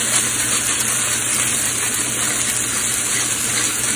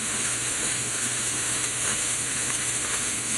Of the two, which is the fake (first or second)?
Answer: second